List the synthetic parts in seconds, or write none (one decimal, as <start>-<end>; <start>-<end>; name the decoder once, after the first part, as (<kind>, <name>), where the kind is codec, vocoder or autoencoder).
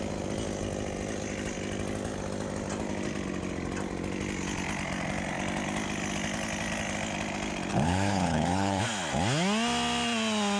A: 7.7-8.8 (codec, HILCodec)